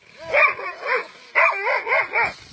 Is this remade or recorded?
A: recorded